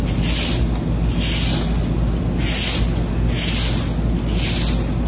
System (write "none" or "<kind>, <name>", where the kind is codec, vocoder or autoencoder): none